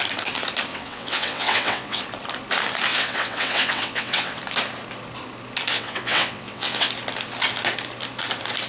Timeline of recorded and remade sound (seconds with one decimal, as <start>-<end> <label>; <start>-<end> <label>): 0.0-0.7 recorded; 0.7-2.0 remade; 2.0-2.9 recorded; 2.9-4.4 remade; 4.4-5.7 recorded; 5.7-6.9 remade; 6.9-8.7 recorded